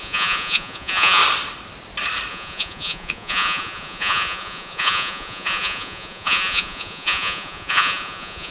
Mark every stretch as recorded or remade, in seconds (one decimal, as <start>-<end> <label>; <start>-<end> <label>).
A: 0.0-1.2 remade; 1.2-2.3 recorded; 2.3-8.5 remade